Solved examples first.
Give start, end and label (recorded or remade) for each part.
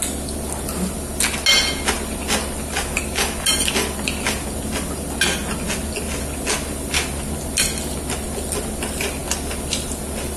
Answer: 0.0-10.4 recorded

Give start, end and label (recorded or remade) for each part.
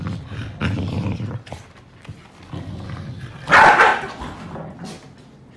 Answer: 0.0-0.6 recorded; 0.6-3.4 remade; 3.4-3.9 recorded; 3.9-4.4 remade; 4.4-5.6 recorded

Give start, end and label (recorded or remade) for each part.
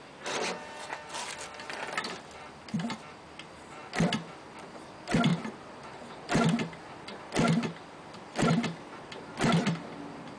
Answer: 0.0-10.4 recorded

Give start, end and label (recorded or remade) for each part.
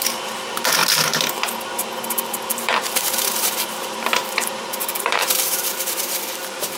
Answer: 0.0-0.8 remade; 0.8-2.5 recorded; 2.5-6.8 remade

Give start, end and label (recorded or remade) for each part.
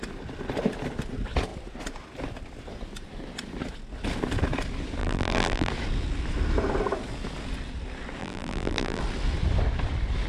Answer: 0.0-5.0 recorded; 5.0-5.7 remade; 5.7-8.2 recorded; 8.2-9.0 remade; 9.0-10.3 recorded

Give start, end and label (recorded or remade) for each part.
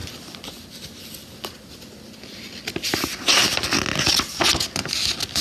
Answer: 0.0-5.4 recorded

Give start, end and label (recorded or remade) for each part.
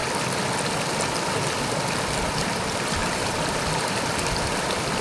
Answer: 0.0-3.0 recorded; 3.0-3.6 remade; 3.6-5.0 recorded